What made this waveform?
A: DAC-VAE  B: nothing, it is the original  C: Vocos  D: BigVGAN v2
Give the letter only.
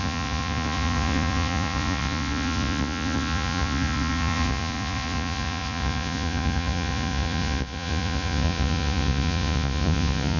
C